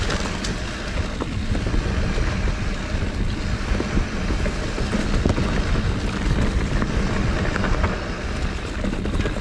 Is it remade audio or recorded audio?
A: recorded